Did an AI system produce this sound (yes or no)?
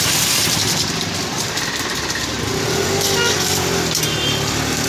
yes